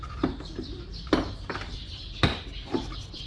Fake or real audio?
real